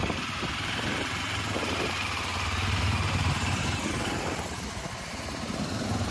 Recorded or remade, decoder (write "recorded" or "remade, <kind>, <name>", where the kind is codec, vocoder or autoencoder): remade, vocoder, BigVGAN v2